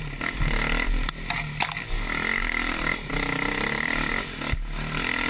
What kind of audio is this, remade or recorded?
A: recorded